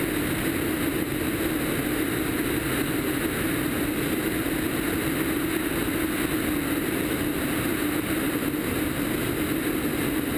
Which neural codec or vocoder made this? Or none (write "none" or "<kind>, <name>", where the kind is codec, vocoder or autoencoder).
none